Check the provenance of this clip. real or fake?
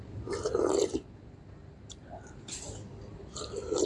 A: real